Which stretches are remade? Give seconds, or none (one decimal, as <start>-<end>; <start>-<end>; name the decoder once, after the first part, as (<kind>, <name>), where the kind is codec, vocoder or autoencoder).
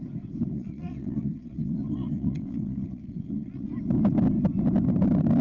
0.5-3.7 (vocoder, Vocos)